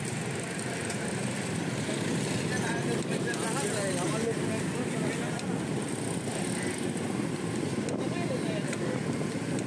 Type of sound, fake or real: real